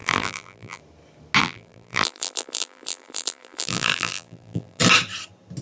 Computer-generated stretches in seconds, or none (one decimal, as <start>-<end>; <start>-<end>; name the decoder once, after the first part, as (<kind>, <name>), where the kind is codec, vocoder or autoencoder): 0.0-0.8 (vocoder, BigVGAN v2); 1.4-4.8